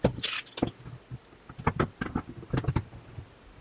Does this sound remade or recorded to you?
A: recorded